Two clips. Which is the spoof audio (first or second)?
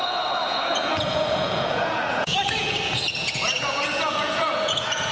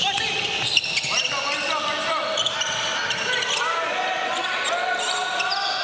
first